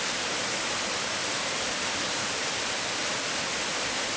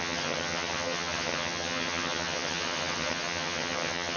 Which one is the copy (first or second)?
second